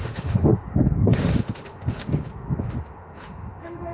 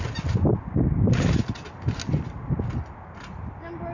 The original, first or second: second